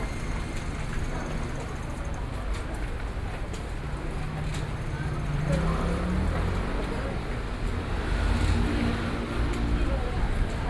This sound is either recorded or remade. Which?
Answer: recorded